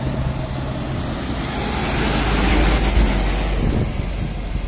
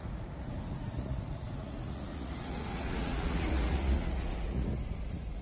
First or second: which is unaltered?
first